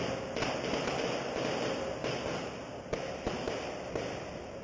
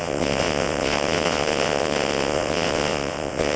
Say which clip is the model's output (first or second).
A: second